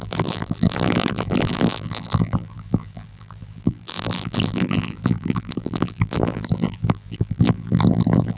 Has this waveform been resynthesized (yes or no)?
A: yes